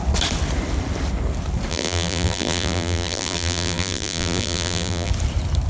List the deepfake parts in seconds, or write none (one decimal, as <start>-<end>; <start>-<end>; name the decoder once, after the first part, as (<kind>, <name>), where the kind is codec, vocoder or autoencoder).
1.7-5.1 (vocoder, BigVGAN v2)

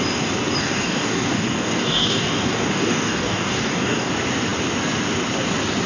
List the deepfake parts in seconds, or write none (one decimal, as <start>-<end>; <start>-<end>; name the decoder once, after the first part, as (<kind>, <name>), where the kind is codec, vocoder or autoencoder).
0.6-4.1 (codec, DAC)

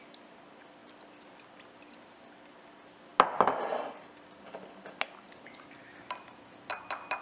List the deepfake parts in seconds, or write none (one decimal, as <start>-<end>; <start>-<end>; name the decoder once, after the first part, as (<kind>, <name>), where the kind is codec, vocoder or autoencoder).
none

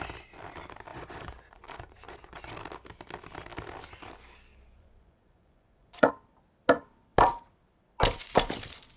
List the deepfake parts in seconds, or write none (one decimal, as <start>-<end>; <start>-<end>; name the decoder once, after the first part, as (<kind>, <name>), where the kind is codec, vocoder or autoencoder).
0.9-2.5 (vocoder, Vocos); 4.5-6.1

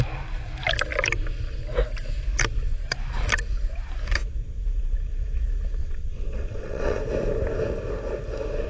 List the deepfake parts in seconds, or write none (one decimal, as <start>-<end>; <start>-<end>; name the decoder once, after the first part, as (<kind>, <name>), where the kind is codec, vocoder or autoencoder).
5.8-7.0 (vocoder, WaveNeXt)

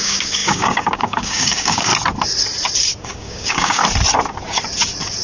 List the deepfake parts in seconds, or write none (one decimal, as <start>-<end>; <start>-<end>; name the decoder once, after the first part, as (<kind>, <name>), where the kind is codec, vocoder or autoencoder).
0.0-1.9 (codec, DAC); 3.0-3.8